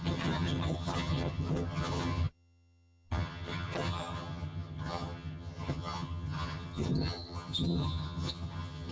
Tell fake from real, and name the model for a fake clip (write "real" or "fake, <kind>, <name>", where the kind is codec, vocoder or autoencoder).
fake, vocoder, HiFi-GAN